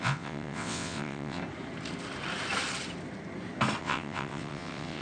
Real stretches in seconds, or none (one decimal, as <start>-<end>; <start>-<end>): 1.4-3.8

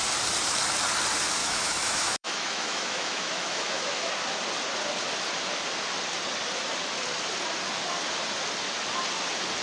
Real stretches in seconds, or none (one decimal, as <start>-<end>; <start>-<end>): 0.0-1.4; 4.1-9.6

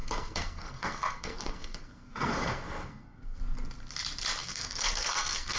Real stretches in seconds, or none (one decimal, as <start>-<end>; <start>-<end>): 3.4-4.4

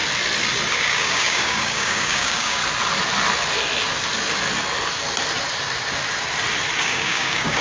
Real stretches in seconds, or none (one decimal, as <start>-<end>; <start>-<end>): 0.0-0.7; 2.6-6.8